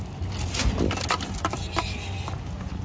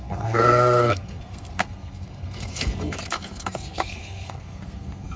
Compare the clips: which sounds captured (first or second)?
first